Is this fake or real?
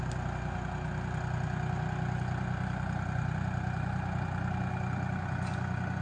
real